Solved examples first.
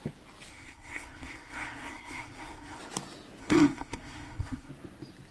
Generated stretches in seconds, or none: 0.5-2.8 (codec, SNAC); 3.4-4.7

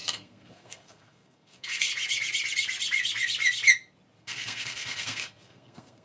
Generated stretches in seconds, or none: 0.0-1.9 (codec, SNAC); 4.2-6.0

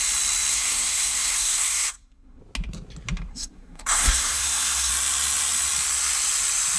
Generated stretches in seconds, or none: 0.5-2.4 (codec, SNAC); 3.3-4.9

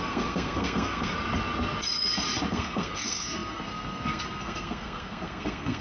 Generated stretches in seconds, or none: 0.0-1.1 (codec, SNAC); 2.5-5.8

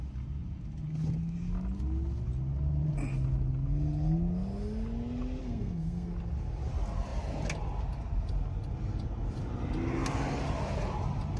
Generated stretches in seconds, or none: 5.4-6.1 (codec, SNAC)